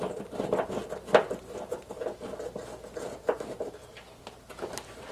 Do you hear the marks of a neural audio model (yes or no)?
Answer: no